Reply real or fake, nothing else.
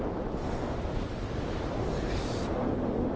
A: real